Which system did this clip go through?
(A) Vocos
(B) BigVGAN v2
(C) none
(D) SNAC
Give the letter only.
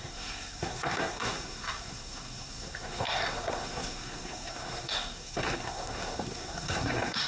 D